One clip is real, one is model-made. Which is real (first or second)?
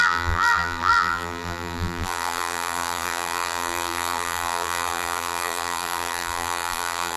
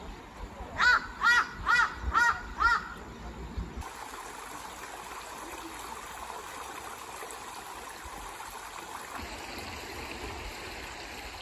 second